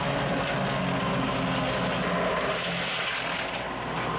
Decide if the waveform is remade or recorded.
recorded